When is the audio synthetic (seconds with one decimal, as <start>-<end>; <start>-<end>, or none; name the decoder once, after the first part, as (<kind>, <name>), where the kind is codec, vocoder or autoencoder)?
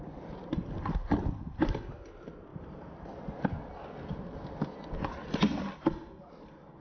none